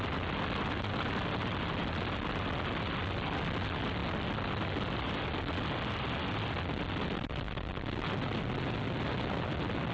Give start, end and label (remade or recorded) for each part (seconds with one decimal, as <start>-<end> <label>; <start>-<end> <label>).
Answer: 0.0-9.9 recorded